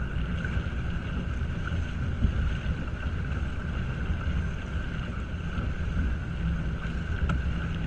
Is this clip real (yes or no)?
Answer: yes